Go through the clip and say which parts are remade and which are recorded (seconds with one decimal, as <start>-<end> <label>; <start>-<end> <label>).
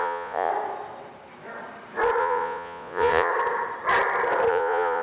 0.0-0.5 remade; 0.5-2.2 recorded; 2.2-3.3 remade; 3.3-4.5 recorded; 4.5-5.0 remade